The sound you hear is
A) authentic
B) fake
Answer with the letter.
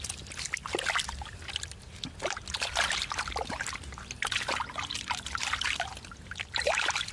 A